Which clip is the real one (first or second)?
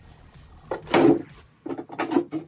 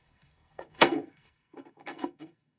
first